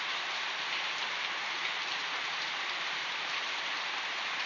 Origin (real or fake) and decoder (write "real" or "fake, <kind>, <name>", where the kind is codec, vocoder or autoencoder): fake, vocoder, BigVGAN v2